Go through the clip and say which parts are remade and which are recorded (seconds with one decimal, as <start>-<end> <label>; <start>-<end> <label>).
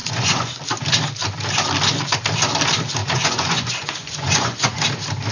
0.0-0.6 remade; 0.6-3.0 recorded; 3.0-4.8 remade; 4.8-5.3 recorded